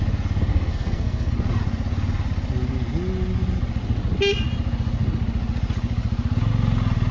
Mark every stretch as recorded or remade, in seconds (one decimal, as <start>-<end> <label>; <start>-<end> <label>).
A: 0.0-0.5 recorded; 0.5-1.3 remade; 1.3-7.1 recorded